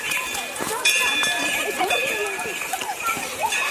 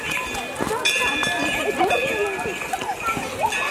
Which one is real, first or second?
second